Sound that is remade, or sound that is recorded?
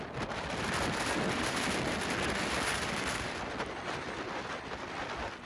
remade